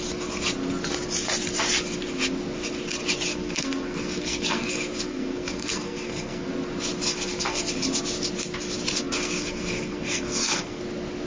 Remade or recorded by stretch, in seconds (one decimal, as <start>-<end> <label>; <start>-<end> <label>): 0.0-3.3 recorded; 3.3-6.5 remade; 6.5-7.1 recorded; 7.1-7.7 remade; 7.7-8.9 recorded; 8.9-10.8 remade; 10.8-11.3 recorded